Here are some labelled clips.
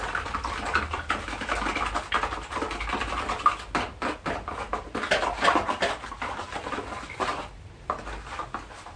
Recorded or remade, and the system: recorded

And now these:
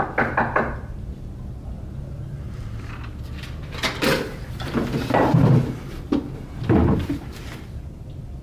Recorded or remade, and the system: recorded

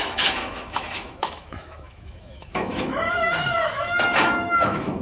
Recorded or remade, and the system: remade, autoencoder, DAC-VAE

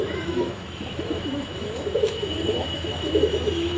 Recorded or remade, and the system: remade, autoencoder, DAC-VAE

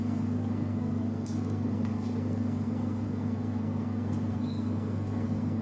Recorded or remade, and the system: remade, codec, SNAC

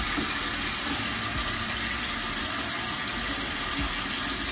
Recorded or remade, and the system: recorded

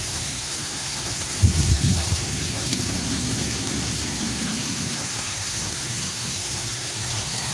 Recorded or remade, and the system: remade, codec, SNAC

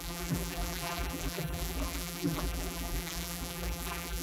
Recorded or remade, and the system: remade, vocoder, BigVGAN v2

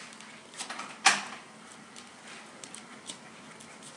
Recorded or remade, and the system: recorded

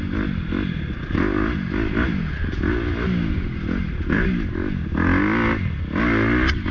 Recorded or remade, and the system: recorded